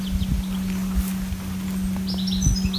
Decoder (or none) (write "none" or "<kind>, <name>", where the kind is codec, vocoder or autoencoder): none